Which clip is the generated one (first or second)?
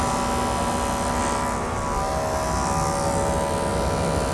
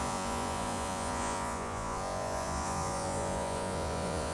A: second